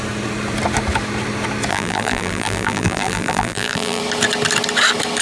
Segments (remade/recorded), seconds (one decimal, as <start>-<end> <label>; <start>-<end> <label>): 0.0-1.7 recorded; 1.7-4.0 remade; 4.0-5.2 recorded